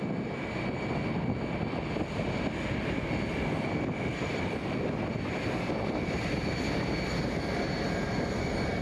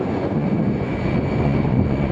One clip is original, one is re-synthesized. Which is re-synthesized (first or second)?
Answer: second